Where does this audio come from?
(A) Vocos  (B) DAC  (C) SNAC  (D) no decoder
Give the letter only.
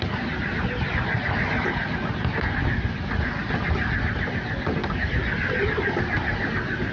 D